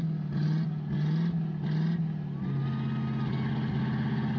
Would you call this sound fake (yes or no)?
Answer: no